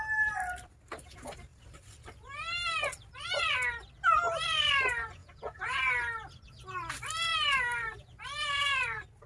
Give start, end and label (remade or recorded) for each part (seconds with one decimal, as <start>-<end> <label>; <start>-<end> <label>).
0.0-5.2 recorded; 5.2-5.8 remade; 5.8-9.3 recorded